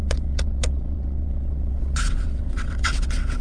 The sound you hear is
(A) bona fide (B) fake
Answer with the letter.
B